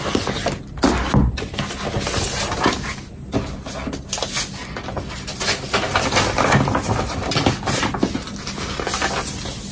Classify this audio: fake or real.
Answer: real